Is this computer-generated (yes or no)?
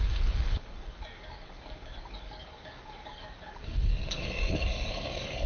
yes